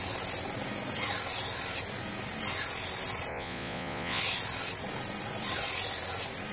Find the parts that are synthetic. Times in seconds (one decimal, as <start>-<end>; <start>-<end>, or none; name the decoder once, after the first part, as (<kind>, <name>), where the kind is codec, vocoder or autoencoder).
3.3-4.2 (vocoder, Vocos)

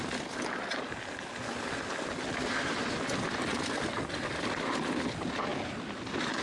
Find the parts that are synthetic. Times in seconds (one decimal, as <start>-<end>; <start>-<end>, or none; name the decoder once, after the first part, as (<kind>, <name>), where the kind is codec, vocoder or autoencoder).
none

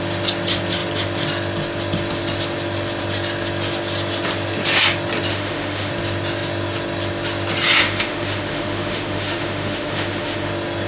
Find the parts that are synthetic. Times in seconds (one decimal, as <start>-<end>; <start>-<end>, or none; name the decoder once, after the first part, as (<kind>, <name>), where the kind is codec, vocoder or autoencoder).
5.3-5.9 (autoencoder, DAC-VAE); 7.8-10.5

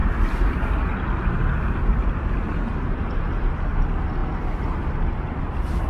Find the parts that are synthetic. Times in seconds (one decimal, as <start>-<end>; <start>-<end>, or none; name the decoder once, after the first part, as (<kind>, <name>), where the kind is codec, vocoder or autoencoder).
none

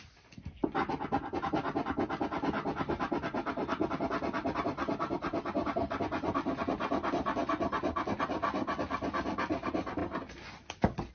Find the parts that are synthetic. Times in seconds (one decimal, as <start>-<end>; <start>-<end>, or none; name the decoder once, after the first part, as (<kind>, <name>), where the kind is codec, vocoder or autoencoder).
none